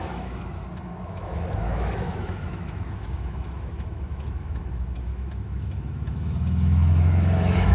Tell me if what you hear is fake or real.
fake